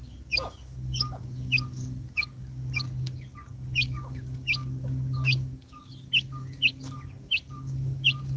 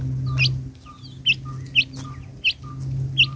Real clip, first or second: second